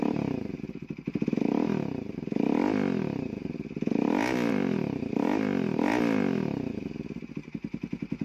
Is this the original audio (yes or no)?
yes